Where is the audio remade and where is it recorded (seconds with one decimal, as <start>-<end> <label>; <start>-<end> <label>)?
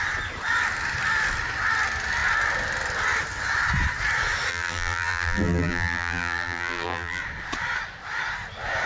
0.0-4.5 recorded; 4.5-7.2 remade; 7.2-8.9 recorded